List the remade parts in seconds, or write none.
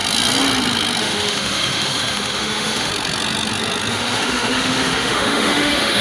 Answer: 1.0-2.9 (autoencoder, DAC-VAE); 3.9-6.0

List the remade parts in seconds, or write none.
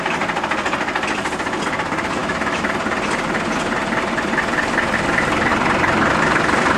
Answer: 2.2-2.7 (autoencoder, DAC-VAE)